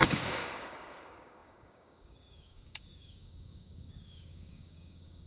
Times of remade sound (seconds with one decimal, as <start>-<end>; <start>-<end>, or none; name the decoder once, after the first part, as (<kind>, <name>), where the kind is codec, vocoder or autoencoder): 0.0-5.3 (codec, DAC)